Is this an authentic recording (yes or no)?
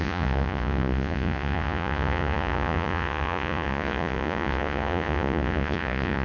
no